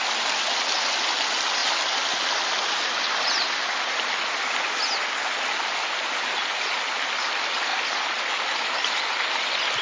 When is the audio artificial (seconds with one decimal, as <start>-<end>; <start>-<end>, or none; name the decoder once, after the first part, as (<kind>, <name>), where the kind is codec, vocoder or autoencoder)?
none